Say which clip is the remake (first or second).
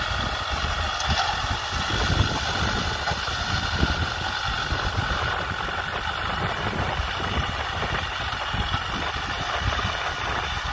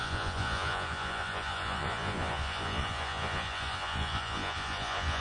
second